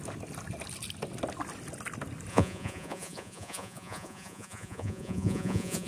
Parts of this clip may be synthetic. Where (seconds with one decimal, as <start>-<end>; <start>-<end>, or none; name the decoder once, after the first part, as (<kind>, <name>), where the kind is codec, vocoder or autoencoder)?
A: 2.3-5.9 (vocoder, Vocos)